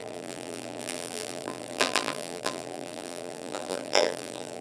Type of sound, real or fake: fake